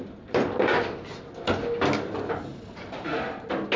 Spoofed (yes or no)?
no